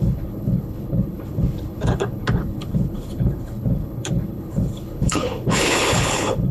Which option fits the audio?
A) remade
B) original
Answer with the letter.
A